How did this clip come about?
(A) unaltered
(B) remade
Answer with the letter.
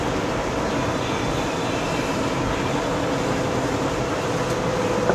A